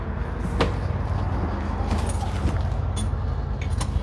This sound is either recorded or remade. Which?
recorded